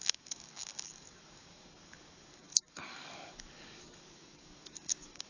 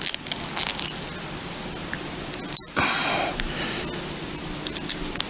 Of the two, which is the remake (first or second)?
first